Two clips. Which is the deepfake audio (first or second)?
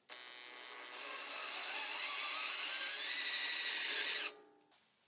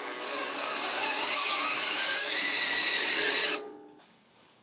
second